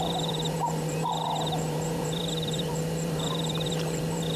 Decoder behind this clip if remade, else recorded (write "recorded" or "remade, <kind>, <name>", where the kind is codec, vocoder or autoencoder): remade, vocoder, BigVGAN v2